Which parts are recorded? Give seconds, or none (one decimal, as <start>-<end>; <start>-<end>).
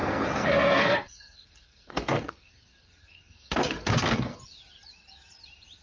2.5-3.0; 4.4-5.8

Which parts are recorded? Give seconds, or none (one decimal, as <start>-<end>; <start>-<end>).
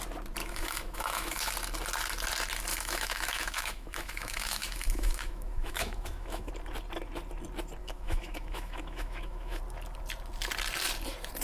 0.0-0.4; 1.5-2.7; 6.5-7.8; 9.6-11.4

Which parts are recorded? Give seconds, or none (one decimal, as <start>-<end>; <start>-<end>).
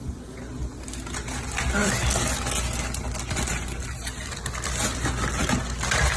0.0-6.2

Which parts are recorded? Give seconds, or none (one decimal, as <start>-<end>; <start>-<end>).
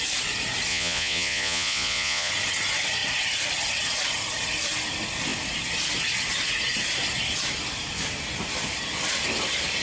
0.0-0.7; 2.3-9.8